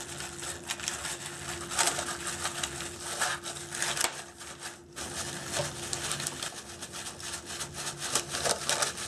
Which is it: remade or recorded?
recorded